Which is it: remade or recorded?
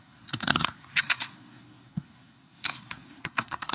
remade